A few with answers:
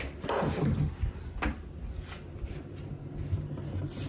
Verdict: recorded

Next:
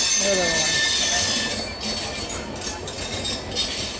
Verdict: recorded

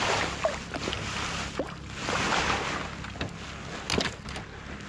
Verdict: recorded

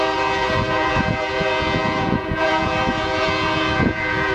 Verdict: remade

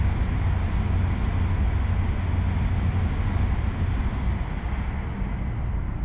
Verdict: recorded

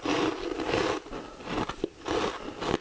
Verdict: recorded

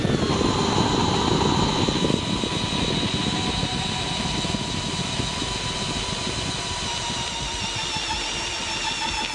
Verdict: recorded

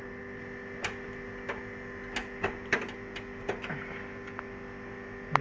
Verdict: recorded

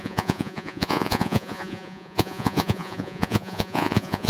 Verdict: remade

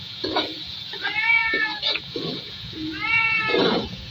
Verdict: remade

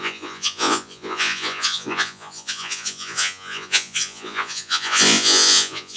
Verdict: remade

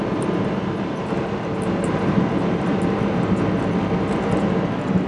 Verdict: recorded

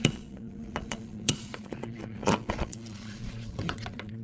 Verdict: remade